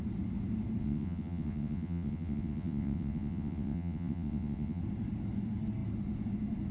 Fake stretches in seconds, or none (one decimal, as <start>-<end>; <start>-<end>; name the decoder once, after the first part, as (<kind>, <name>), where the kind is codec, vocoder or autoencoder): 0.8-4.8 (vocoder, WaveNeXt)